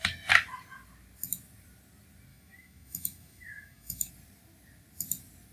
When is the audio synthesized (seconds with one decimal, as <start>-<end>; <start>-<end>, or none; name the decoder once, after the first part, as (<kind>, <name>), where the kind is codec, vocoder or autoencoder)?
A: 2.3-4.1 (autoencoder, DAC-VAE)